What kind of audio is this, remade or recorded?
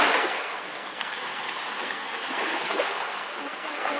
remade